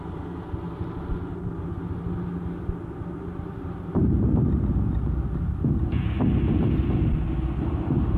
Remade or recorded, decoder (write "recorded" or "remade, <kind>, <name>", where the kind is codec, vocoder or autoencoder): recorded